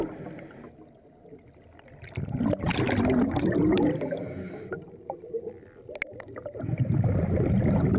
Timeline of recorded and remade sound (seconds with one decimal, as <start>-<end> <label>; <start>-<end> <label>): 0.0-8.0 recorded